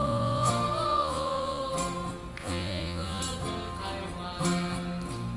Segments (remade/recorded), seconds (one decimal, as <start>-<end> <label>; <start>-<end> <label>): 0.0-0.5 remade; 0.5-0.9 recorded; 0.9-1.6 remade; 1.6-2.4 recorded; 2.4-3.2 remade; 3.2-5.4 recorded